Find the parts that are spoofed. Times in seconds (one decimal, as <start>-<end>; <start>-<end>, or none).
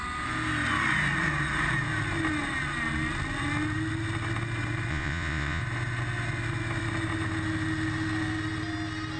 4.9-5.6